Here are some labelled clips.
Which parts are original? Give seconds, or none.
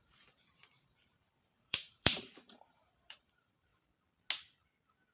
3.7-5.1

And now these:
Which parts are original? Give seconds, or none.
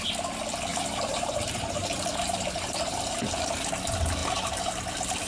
0.0-0.7; 3.7-4.2; 4.7-5.3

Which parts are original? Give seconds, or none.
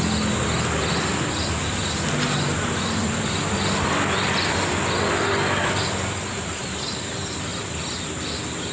0.0-7.5; 8.1-8.7